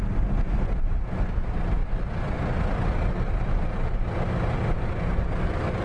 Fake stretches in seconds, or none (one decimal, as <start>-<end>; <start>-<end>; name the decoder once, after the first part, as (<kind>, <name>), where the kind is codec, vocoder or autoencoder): none